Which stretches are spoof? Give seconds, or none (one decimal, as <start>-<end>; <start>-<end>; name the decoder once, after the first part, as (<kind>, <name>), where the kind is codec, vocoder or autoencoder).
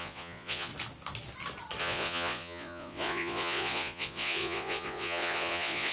0.0-0.7 (vocoder, Vocos); 1.8-5.9